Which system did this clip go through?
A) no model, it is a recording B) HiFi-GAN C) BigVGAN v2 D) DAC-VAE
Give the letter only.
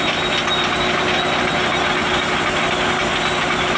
A